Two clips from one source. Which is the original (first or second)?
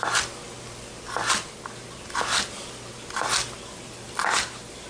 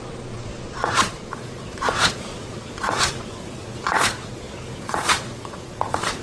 first